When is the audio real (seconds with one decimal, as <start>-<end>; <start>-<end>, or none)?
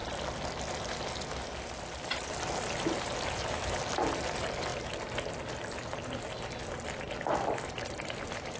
0.0-8.6